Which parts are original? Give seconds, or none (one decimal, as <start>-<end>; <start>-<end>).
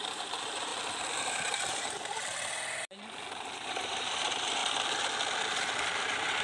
0.7-1.2; 2.3-3.6; 4.6-6.0